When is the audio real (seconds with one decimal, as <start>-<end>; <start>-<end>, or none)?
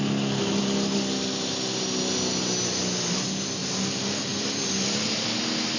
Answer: 0.0-5.8